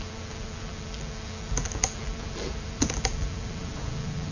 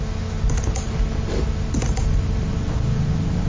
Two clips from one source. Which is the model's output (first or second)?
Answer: first